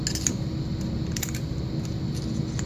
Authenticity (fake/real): real